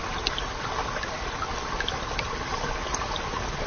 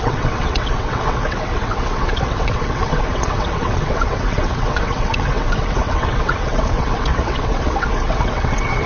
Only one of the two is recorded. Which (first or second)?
first